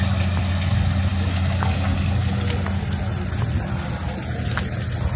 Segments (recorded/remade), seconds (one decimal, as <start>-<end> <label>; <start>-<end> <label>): 0.0-5.2 recorded